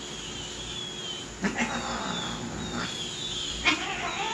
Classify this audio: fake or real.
real